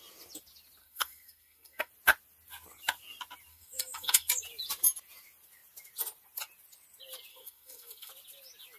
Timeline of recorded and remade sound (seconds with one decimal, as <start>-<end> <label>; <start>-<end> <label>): 0.0-0.8 recorded; 0.8-1.9 remade; 1.9-3.5 recorded; 3.5-4.3 remade; 4.3-7.3 recorded; 7.3-8.1 remade; 8.1-8.8 recorded